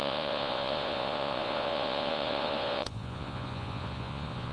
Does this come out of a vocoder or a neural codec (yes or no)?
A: yes